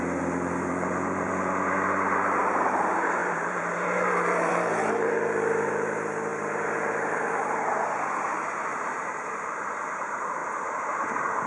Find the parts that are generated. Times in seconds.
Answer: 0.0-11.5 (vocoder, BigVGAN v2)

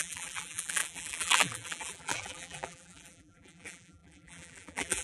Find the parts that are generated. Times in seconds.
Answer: 0.0-5.0 (vocoder, BigVGAN v2)

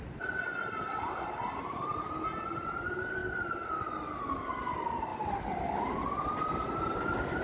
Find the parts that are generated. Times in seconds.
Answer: none